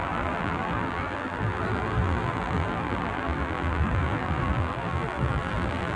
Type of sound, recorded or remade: remade